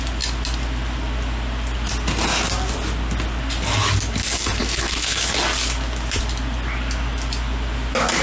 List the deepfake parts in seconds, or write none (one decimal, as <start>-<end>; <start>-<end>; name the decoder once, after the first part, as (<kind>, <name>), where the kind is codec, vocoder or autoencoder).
4.6-5.3 (autoencoder, DAC-VAE)